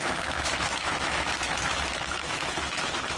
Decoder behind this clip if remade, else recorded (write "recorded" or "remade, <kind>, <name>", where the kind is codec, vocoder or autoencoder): remade, autoencoder, DAC-VAE